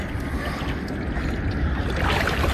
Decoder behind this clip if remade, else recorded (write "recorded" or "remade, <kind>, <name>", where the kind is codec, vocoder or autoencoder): recorded